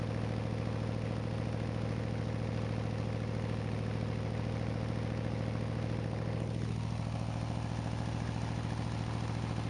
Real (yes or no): yes